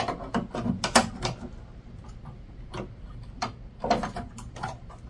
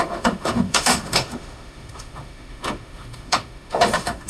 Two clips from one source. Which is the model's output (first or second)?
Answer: second